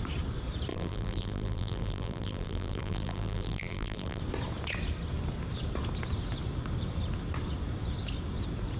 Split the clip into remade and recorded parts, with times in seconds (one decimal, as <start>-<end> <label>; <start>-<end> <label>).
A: 0.0-0.7 recorded; 0.7-4.2 remade; 4.2-8.8 recorded